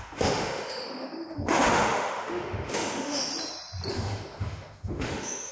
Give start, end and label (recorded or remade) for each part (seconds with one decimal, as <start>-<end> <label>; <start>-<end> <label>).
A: 0.0-3.3 remade; 3.3-3.9 recorded; 3.9-5.5 remade